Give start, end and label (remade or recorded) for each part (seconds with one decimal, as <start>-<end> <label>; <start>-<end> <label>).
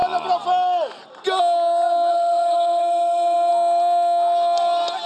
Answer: 0.0-2.1 recorded; 2.1-3.5 remade; 3.5-5.1 recorded